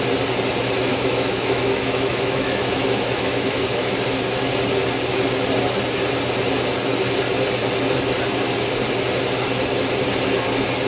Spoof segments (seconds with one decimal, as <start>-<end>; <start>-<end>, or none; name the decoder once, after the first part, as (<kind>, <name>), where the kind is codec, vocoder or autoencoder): 0.9-3.9 (autoencoder, DAC-VAE)